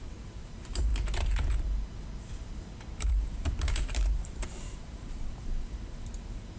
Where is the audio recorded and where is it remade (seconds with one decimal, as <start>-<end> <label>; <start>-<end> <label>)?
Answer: 0.0-0.9 remade; 0.9-3.0 recorded; 3.0-6.6 remade